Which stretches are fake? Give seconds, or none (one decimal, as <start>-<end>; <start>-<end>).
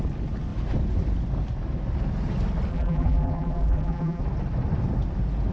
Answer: 2.7-4.2